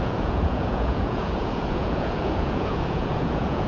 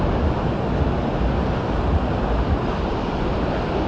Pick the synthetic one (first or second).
first